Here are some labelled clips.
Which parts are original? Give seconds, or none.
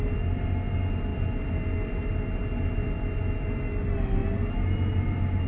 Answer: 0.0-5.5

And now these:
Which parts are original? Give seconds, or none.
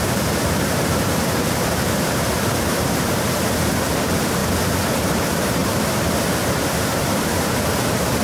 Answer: 4.4-4.9; 5.6-6.8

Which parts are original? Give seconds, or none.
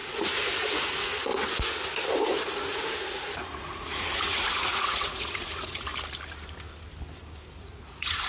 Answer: 1.3-2.4; 5.9-7.6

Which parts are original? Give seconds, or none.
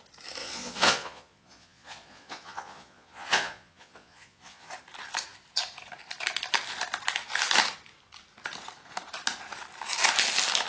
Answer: 0.0-0.4; 4.7-10.7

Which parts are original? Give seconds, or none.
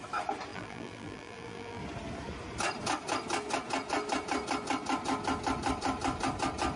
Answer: 0.0-0.5; 1.8-6.8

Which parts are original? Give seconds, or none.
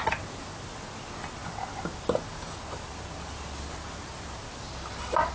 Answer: 0.0-5.3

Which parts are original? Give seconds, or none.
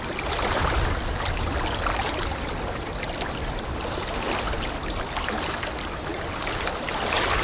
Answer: 0.0-7.4